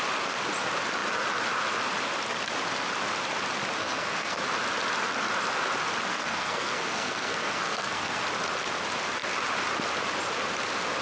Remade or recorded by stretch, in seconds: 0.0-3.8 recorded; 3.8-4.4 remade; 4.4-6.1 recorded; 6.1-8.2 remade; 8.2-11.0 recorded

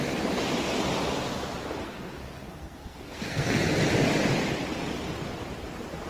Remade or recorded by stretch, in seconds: 0.0-1.8 recorded; 1.8-3.6 remade; 3.6-6.1 recorded